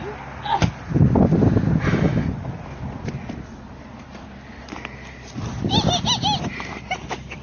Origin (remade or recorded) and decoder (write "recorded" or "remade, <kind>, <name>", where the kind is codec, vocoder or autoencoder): recorded